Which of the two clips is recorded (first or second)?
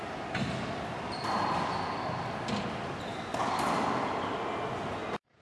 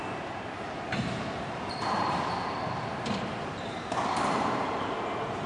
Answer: first